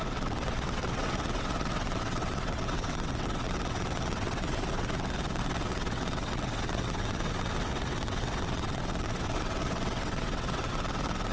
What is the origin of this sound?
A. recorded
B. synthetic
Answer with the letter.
B